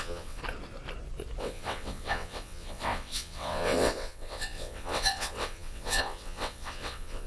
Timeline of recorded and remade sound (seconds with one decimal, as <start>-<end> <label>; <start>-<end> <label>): 0.0-0.4 remade; 0.4-1.4 recorded; 1.4-7.3 remade